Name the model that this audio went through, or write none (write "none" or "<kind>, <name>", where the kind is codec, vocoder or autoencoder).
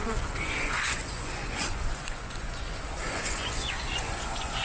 vocoder, Vocos